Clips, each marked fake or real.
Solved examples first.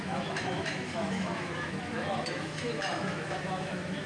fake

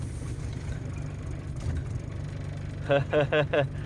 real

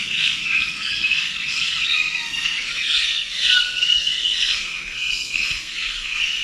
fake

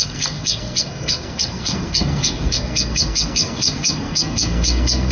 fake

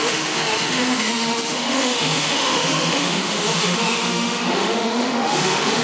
fake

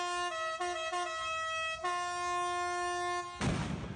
real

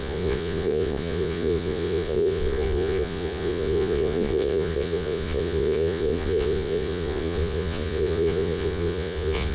fake